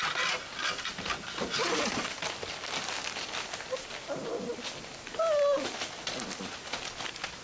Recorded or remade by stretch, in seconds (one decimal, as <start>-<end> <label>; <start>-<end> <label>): 0.0-7.4 recorded